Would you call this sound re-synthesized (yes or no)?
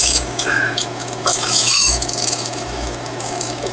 yes